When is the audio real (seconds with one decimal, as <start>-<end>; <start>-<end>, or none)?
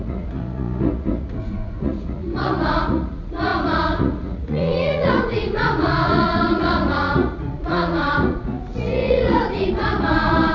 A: none